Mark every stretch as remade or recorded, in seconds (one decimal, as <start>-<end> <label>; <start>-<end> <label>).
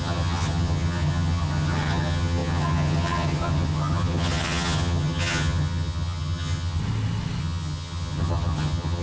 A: 0.0-6.8 remade; 6.8-7.4 recorded; 7.4-9.0 remade